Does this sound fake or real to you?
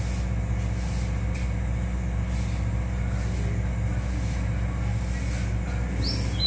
real